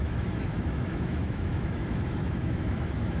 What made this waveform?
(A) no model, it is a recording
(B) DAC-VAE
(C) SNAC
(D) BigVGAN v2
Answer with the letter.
B